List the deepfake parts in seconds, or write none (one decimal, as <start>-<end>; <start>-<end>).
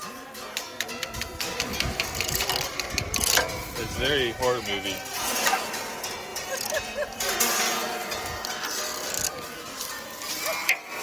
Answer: 1.7-3.4; 6.3-7.5; 8.0-8.5